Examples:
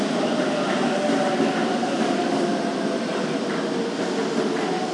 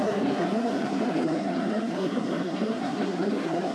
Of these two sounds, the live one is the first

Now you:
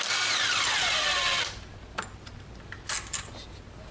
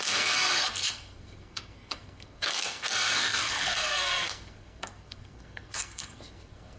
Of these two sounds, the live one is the first